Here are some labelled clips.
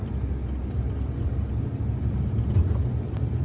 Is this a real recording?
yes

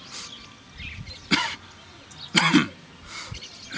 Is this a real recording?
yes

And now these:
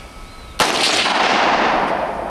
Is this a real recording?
yes